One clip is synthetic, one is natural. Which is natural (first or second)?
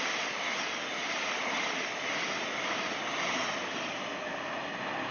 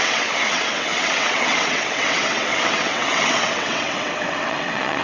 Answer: first